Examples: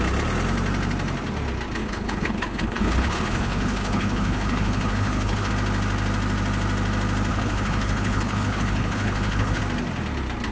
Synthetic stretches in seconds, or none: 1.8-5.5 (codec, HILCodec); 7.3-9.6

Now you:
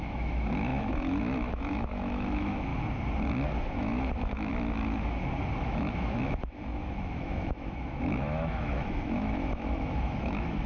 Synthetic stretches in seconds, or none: 0.0-2.7 (autoencoder, DAC-VAE); 3.6-4.5; 5.6-10.7